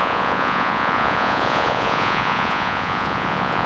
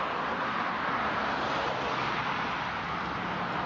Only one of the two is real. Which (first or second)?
second